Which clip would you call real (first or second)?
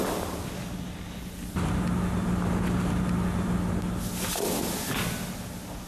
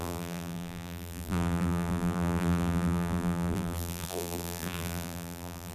first